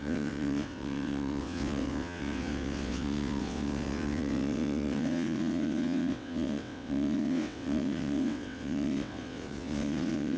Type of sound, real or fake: fake